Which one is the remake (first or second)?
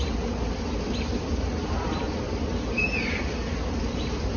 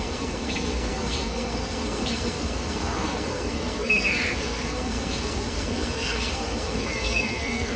second